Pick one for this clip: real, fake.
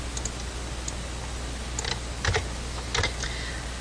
real